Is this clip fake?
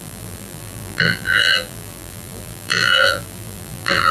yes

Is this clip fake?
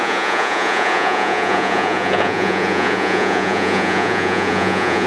yes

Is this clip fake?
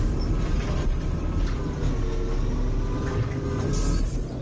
no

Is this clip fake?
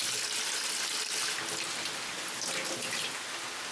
no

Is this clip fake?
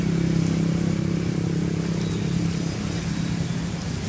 no